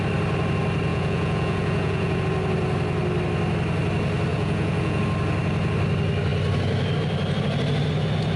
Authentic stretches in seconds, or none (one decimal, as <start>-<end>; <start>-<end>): 0.0-0.9; 2.2-4.3; 5.0-8.4